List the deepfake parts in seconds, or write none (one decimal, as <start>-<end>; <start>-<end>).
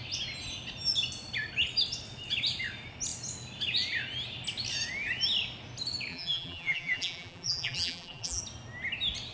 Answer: 6.1-8.4